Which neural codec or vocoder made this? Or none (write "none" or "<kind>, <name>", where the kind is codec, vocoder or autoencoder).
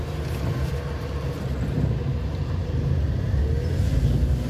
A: none